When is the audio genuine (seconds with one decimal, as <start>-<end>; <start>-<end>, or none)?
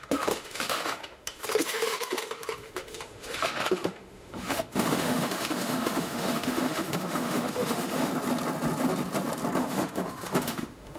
8.1-9.6